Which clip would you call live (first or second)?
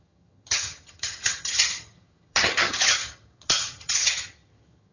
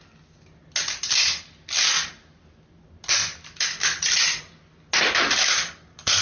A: second